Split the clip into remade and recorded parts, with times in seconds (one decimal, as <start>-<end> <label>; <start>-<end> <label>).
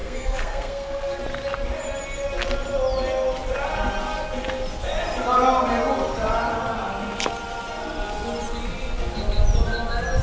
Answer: 0.0-1.2 remade; 1.2-10.2 recorded